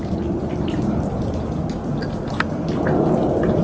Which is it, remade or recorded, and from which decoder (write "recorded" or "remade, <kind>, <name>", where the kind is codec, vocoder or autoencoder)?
recorded